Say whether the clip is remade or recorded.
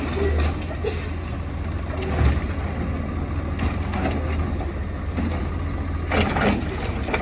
recorded